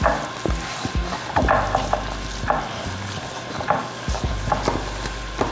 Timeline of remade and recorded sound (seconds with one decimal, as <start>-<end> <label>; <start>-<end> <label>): 0.0-3.8 recorded; 3.8-4.3 remade; 4.3-5.5 recorded